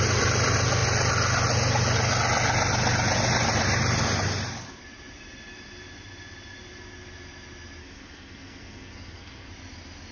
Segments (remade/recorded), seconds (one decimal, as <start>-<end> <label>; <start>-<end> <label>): 0.0-7.8 recorded; 7.8-9.5 remade; 9.5-10.1 recorded